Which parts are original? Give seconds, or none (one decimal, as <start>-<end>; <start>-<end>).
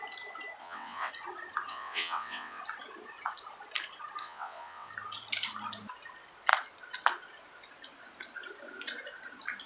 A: 0.0-0.6; 1.1-1.7; 2.6-4.2; 4.9-9.7